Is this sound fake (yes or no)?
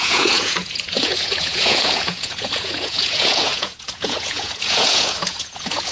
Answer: yes